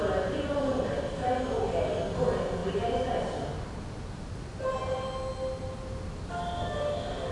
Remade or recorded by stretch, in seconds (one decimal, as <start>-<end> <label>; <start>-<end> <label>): 0.0-7.3 recorded